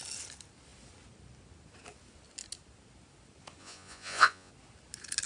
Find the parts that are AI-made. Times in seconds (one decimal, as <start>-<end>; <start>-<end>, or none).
3.6-4.5